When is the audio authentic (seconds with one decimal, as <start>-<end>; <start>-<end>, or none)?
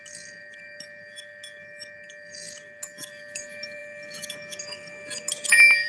0.0-5.9